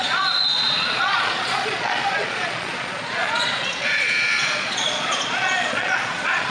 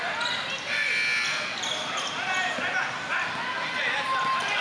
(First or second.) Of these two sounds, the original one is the second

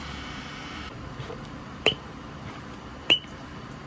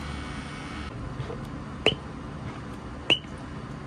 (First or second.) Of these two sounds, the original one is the second